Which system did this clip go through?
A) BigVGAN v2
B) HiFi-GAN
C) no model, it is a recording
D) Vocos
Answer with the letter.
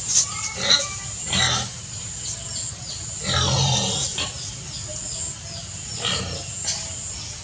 C